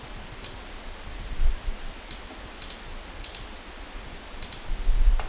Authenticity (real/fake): real